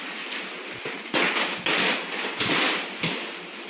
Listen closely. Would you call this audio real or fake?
real